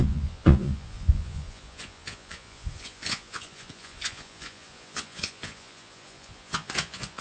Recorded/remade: remade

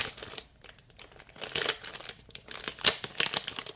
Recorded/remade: recorded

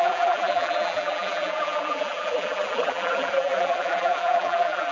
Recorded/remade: remade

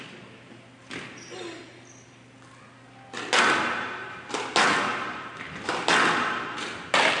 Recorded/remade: recorded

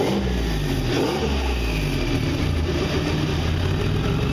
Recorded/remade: recorded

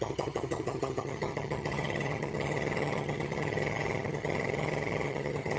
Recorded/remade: remade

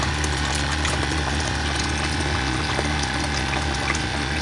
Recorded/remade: remade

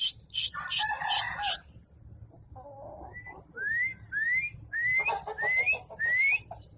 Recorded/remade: recorded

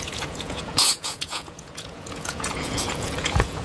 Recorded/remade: remade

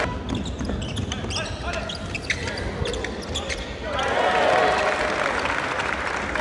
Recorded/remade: recorded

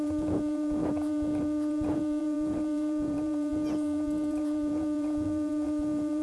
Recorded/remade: remade